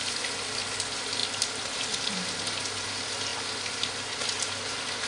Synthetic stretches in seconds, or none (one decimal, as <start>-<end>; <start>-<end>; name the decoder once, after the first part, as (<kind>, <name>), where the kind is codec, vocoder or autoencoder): none